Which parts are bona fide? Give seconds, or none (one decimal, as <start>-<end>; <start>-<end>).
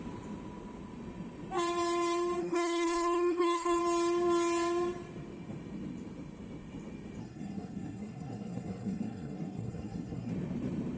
0.0-2.4; 3.8-7.2; 10.3-11.0